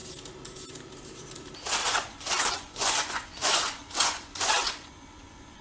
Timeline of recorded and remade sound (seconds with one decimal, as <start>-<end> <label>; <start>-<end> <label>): 0.0-1.8 recorded; 1.8-5.6 remade